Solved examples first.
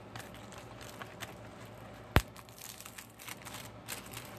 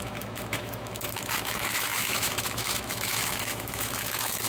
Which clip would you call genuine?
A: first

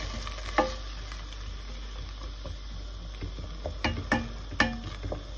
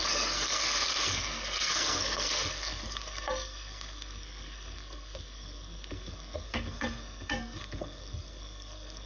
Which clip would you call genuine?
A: first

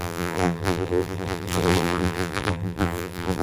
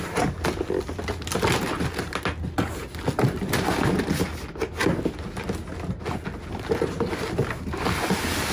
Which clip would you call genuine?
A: second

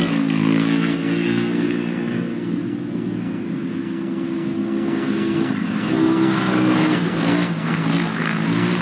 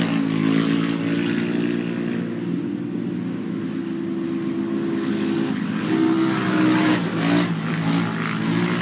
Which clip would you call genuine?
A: second